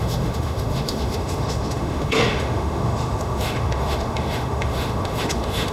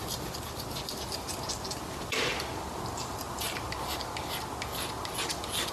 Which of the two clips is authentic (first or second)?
second